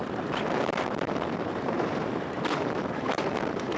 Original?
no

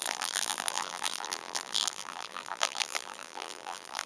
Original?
no